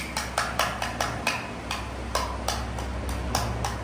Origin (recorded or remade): recorded